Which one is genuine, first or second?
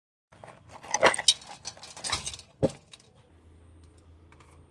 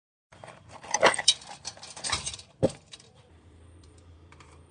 first